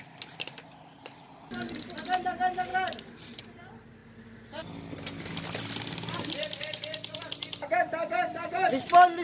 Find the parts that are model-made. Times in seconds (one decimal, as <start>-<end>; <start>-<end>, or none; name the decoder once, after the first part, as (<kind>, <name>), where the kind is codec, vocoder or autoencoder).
none